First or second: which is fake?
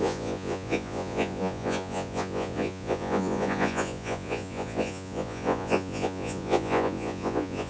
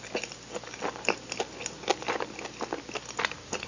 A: first